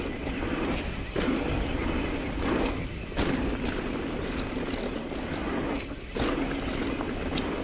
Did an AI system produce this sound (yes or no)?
no